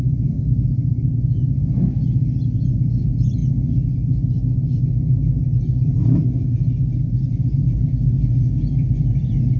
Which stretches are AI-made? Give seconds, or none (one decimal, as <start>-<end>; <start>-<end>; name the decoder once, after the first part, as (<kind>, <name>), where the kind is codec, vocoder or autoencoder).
none